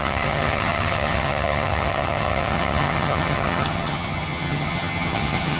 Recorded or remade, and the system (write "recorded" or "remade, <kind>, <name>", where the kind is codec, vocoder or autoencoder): remade, vocoder, HiFi-GAN